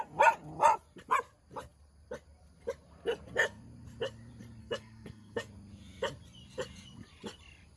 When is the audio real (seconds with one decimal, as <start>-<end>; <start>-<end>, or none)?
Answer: 0.0-4.6; 5.5-7.8